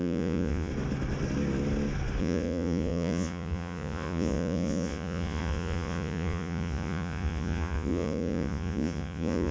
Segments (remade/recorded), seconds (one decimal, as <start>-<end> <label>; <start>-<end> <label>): 0.0-0.7 remade; 0.7-2.2 recorded; 2.2-9.5 remade